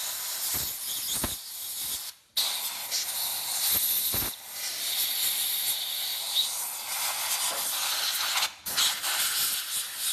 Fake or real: real